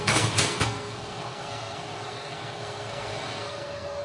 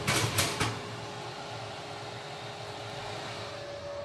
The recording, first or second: second